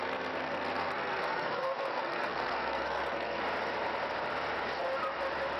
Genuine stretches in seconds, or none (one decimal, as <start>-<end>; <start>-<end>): 3.4-5.6